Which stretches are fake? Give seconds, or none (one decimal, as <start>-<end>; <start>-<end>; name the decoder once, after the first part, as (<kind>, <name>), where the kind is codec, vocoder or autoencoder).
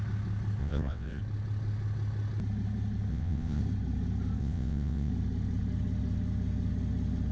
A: 0.6-1.2 (vocoder, WaveNeXt); 3.1-3.6; 4.4-5.1